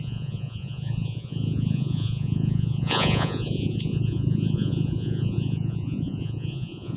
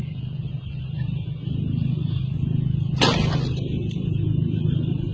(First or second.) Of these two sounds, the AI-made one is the first